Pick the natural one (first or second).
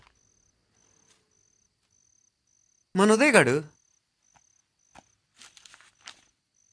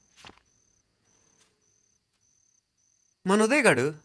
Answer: first